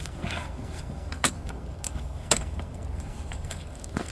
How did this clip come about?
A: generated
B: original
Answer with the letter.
A